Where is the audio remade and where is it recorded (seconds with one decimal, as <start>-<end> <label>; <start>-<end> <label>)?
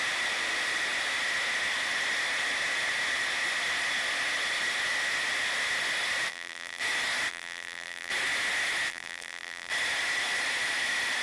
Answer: 0.0-6.3 recorded; 6.3-6.8 remade; 6.8-7.3 recorded; 7.3-8.1 remade; 8.1-8.9 recorded; 8.9-9.7 remade; 9.7-11.2 recorded